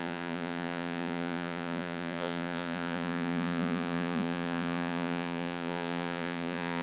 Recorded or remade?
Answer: remade